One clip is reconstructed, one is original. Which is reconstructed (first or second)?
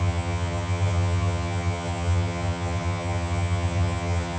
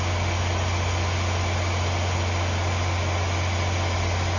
first